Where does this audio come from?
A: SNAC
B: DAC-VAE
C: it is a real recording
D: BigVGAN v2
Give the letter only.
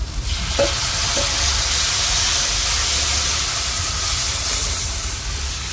C